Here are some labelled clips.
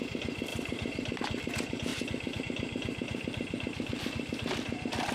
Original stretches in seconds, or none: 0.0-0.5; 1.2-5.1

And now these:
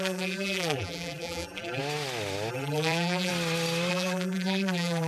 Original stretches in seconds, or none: 1.8-2.5; 3.3-3.9